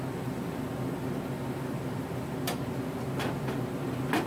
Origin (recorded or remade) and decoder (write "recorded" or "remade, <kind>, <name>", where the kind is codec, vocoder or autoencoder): recorded